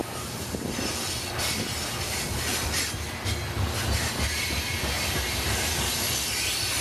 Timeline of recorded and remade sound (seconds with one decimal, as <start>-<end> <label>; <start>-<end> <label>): 0.0-6.8 recorded